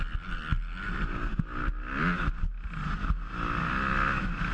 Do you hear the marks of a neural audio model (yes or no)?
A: no